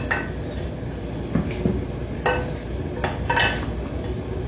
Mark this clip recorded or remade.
recorded